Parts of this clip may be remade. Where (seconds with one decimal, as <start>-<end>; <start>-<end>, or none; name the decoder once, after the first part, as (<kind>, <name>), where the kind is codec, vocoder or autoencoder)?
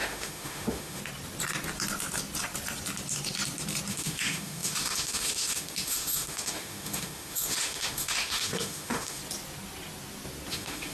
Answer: 0.0-1.0 (autoencoder, DAC-VAE); 3.9-9.2; 10.5-10.9